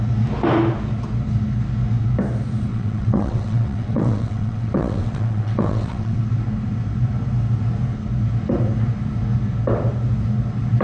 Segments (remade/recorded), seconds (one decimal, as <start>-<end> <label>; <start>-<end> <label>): 0.0-2.7 recorded; 2.7-6.2 remade; 6.2-10.8 recorded